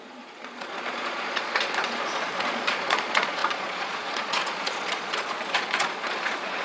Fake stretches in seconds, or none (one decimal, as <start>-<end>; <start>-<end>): 0.0-6.6